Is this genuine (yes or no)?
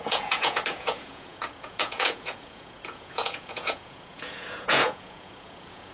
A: no